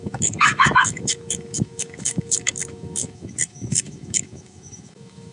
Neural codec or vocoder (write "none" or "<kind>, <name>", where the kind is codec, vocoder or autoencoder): autoencoder, DAC-VAE